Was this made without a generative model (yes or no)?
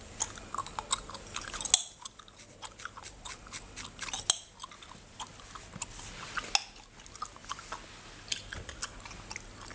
yes